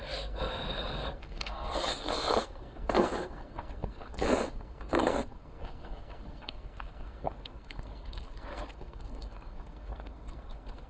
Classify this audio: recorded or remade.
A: remade